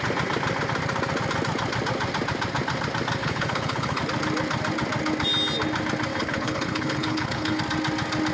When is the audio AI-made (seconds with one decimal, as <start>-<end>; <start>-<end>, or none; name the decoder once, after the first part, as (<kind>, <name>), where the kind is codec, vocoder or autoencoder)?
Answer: 3.2-4.0 (codec, HILCodec); 6.1-7.6